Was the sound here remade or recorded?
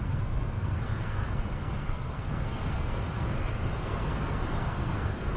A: remade